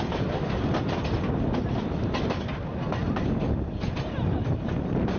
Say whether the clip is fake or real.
real